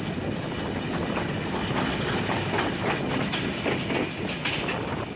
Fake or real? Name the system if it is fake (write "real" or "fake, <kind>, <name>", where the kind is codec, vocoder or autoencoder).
real